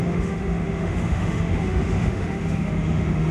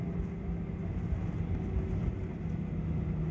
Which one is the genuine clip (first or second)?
second